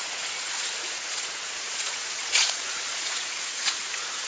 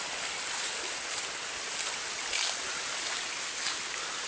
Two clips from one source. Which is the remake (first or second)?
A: first